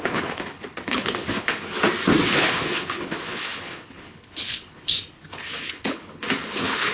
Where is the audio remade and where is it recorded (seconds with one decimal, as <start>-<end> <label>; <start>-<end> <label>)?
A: 0.0-1.5 remade; 1.5-2.3 recorded; 2.3-6.9 remade